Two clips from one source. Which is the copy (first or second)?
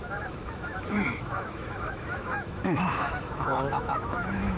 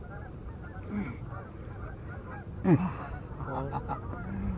first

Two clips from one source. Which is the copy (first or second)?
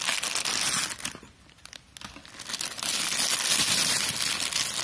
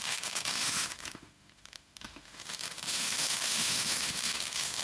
second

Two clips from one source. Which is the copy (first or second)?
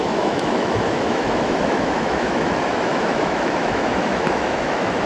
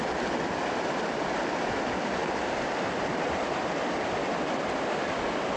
first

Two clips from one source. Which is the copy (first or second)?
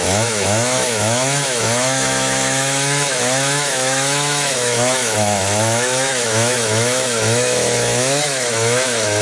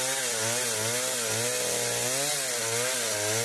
first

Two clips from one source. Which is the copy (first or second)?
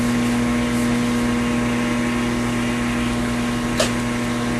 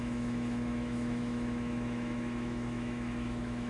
second